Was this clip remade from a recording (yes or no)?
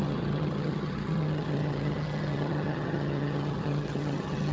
yes